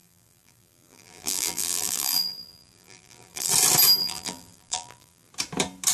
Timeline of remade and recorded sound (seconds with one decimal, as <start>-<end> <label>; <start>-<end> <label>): 0.0-3.5 remade; 3.5-4.0 recorded; 4.0-5.3 remade; 5.3-5.9 recorded